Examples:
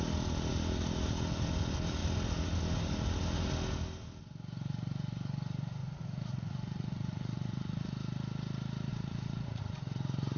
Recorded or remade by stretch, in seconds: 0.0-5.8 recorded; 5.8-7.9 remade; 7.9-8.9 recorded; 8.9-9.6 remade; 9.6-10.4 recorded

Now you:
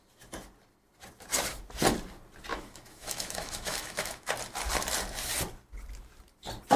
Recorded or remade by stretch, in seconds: 0.0-2.5 recorded; 2.5-4.3 remade; 4.3-6.8 recorded

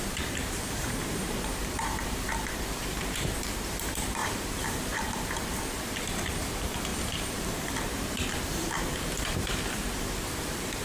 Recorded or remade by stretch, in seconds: 0.0-10.8 remade

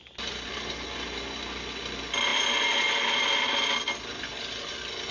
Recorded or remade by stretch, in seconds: 0.0-5.1 recorded

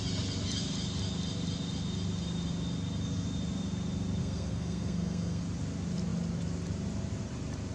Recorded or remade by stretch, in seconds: 0.0-4.2 recorded; 4.2-5.4 remade; 5.4-7.7 recorded

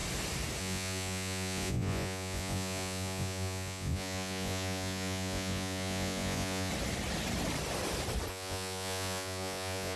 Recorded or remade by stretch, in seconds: 0.0-0.6 recorded; 0.6-6.7 remade; 6.7-8.3 recorded; 8.3-10.0 remade